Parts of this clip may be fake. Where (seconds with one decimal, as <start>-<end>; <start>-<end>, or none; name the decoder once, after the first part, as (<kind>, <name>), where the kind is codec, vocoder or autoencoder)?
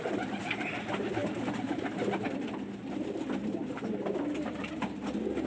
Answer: none